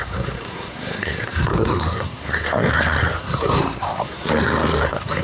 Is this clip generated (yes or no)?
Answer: yes